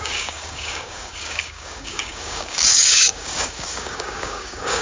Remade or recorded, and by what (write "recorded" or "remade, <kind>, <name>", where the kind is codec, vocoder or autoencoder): remade, codec, DAC